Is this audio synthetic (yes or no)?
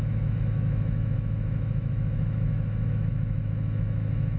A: yes